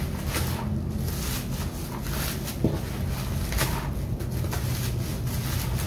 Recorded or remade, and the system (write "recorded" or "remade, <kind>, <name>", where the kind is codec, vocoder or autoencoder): recorded